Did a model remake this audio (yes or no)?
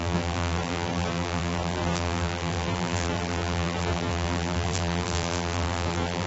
yes